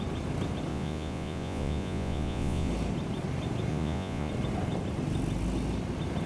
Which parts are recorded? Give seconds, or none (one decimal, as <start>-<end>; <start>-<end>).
0.0-0.7; 2.7-3.7; 4.3-6.3